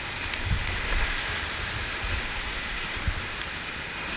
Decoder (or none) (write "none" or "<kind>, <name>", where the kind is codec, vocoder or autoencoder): none